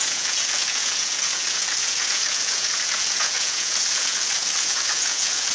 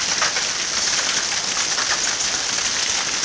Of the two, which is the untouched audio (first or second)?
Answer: second